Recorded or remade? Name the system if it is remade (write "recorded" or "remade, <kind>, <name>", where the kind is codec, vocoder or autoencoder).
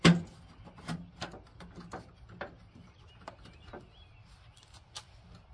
recorded